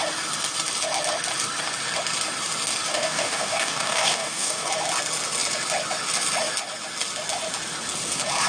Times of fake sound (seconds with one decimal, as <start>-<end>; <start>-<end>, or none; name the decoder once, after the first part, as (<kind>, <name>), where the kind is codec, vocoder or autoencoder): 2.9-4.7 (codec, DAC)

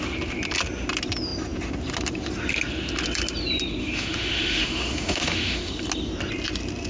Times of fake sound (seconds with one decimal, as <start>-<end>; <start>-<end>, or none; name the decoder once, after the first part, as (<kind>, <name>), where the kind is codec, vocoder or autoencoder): 3.8-5.7 (autoencoder, DAC-VAE)

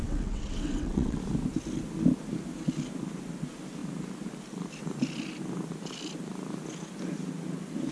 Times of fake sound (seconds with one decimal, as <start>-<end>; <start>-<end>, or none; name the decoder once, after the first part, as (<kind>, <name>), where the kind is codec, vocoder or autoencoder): 0.0-1.2 (vocoder, WaveNeXt)

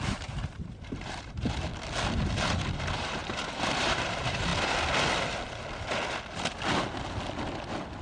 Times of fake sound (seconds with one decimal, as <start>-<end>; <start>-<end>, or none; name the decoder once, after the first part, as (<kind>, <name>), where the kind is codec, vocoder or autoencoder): 0.0-1.7 (vocoder, BigVGAN v2); 2.8-4.5

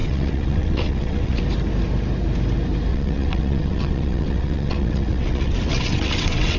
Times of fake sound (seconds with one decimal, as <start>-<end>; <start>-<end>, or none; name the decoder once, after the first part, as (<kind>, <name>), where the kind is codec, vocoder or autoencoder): 0.0-1.4 (vocoder, WaveNeXt); 2.9-6.6

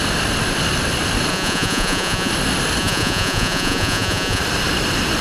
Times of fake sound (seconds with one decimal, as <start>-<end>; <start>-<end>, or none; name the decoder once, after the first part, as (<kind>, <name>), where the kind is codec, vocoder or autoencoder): 1.3-2.3 (vocoder, Vocos); 2.8-4.4

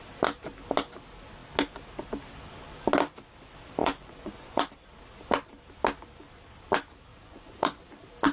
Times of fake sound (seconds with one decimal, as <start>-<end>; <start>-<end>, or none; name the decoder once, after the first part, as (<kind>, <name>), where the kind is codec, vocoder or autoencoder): 3.8-4.7 (vocoder, Vocos); 7.1-7.8

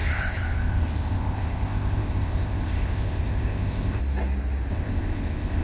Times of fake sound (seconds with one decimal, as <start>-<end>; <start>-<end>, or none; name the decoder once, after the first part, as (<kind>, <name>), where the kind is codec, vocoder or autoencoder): 0.0-4.0 (codec, ZipCodec); 4.7-5.6